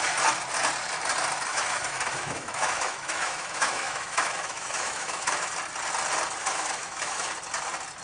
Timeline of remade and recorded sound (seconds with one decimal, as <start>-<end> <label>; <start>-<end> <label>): 0.0-1.5 recorded; 1.5-5.5 remade; 5.5-6.4 recorded; 6.4-7.3 remade; 7.3-8.0 recorded